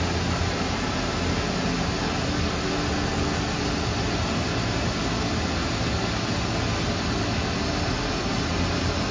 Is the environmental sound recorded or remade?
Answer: recorded